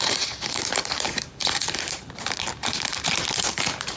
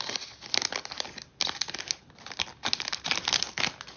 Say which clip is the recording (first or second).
second